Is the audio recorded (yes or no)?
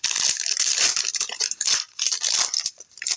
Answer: no